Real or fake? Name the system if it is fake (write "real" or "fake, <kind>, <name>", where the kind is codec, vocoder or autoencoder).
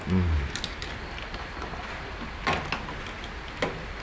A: real